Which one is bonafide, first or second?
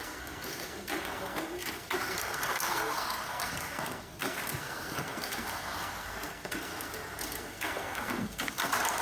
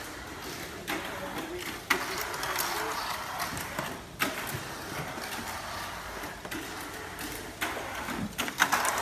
second